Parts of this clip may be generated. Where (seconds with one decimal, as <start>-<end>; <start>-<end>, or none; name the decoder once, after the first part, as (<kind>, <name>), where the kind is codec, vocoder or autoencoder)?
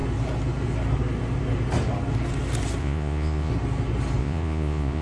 2.8-3.5 (vocoder, Vocos); 4.2-5.0